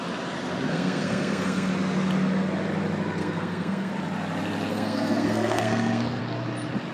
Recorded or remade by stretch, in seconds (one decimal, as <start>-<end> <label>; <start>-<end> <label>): 0.0-0.7 recorded; 0.7-1.7 remade; 1.7-3.2 recorded; 3.2-3.9 remade; 3.9-4.7 recorded; 4.7-6.2 remade; 6.2-6.9 recorded